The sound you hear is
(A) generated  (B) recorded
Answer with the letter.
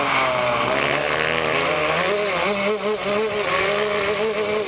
B